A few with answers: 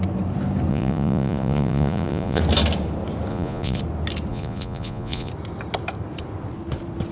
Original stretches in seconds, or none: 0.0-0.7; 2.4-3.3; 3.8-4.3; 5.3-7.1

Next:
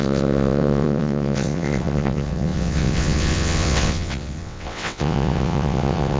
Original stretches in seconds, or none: none

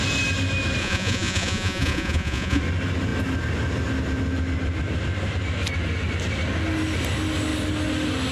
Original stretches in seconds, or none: 0.0-0.8; 2.6-8.3